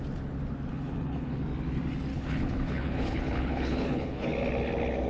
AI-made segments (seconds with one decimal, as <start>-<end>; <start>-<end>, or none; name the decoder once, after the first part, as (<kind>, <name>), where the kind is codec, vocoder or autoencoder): 0.7-1.4 (codec, HILCodec); 2.1-4.3